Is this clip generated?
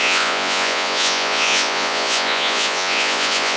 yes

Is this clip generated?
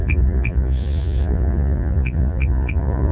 yes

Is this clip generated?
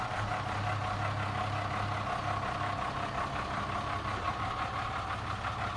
no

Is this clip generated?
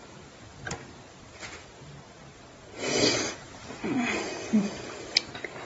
no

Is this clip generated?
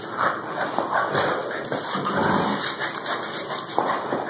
no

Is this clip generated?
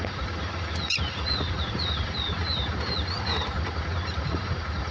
yes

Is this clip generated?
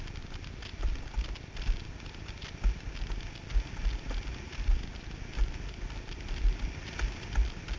no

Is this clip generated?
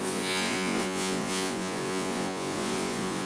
yes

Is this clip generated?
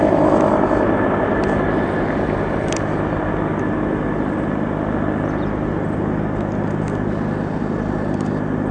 no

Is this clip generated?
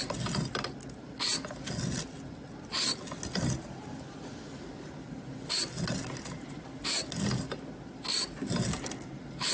no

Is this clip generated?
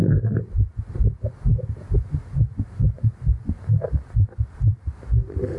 no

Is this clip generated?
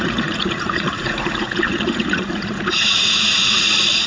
yes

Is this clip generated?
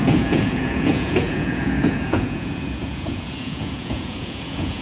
yes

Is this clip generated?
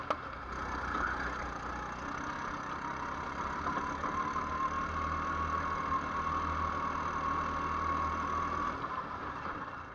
no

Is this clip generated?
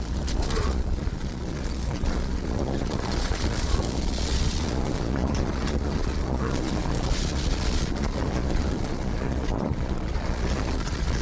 yes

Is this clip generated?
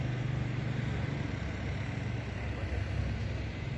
no